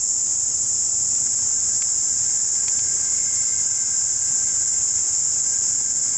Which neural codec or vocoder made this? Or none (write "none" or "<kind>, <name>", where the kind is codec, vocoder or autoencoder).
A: none